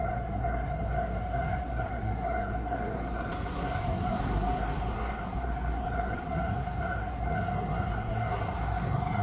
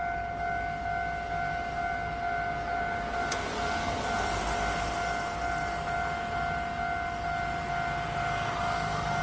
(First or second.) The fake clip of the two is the first